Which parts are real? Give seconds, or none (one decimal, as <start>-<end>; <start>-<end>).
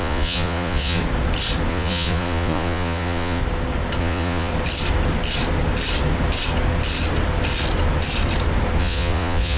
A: 1.0-1.7; 3.4-4.0; 4.5-8.8